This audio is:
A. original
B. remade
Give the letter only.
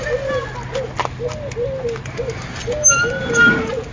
A